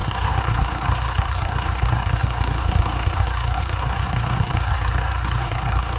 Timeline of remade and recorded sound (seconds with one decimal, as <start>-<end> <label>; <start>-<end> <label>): 0.0-6.0 remade